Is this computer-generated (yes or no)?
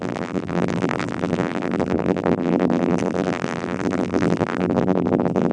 yes